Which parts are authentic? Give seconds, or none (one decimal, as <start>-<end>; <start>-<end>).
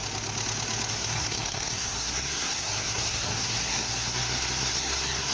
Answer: 0.0-0.9